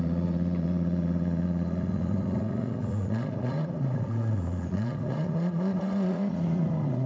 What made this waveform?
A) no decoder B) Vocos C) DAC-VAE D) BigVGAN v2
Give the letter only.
B